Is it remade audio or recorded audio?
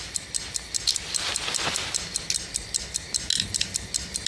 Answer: recorded